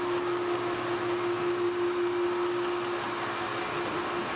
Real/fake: real